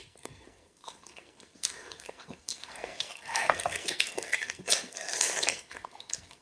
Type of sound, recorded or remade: remade